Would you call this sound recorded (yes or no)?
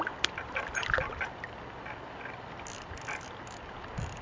yes